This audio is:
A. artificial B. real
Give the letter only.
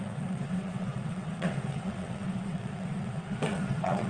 A